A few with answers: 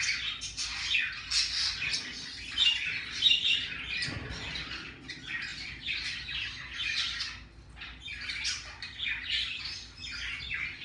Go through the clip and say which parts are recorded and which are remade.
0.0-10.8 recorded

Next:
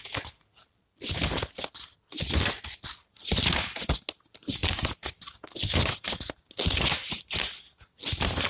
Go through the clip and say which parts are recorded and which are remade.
0.0-8.5 recorded

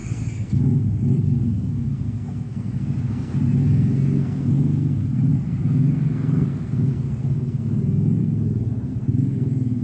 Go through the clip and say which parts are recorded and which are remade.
0.0-9.8 remade